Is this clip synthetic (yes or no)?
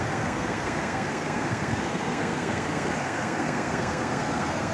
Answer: yes